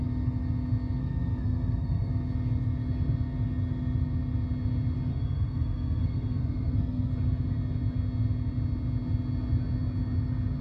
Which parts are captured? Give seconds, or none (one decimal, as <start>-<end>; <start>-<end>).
0.0-1.0; 2.1-5.1; 7.1-10.6